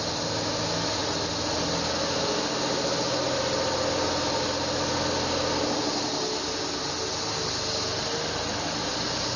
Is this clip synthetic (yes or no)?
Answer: no